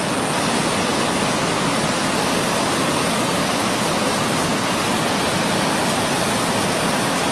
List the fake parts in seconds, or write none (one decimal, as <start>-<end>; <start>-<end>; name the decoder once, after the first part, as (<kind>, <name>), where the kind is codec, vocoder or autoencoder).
none